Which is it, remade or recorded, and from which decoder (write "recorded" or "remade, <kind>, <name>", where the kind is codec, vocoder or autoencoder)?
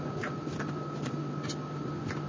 recorded